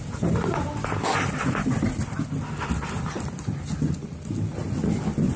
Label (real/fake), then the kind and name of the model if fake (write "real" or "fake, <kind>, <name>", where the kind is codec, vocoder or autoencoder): fake, vocoder, BigVGAN v2